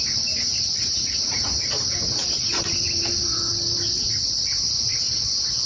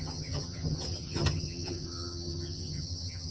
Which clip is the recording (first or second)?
first